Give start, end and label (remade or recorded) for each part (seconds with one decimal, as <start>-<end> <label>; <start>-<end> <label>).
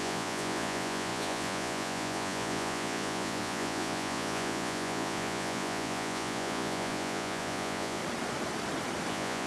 0.0-8.0 remade; 8.0-9.1 recorded; 9.1-9.5 remade